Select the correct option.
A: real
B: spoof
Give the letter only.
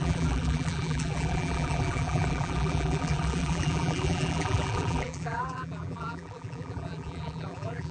B